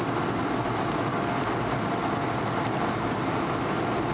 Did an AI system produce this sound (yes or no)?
no